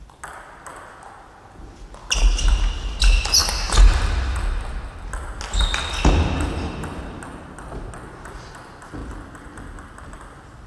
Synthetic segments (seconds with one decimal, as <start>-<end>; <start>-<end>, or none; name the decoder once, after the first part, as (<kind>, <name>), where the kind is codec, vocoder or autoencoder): none